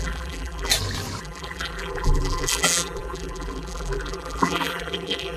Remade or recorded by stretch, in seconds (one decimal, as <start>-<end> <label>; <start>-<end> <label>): 0.0-0.7 remade; 0.7-1.2 recorded; 1.2-5.4 remade